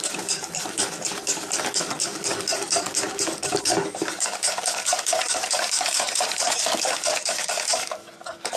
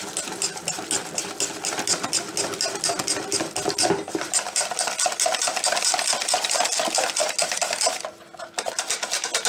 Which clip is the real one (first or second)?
second